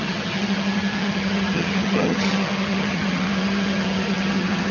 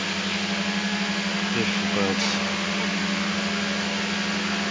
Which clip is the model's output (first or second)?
first